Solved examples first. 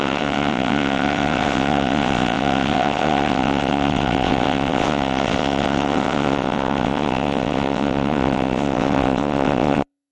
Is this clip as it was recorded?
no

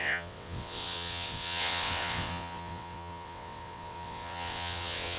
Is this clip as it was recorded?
no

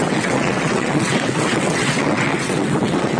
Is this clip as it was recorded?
no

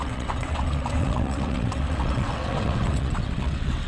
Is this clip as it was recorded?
no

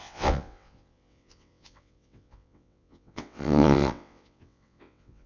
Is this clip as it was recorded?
no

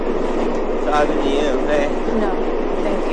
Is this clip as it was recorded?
yes